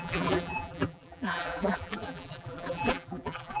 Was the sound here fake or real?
fake